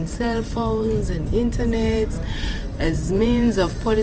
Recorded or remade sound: remade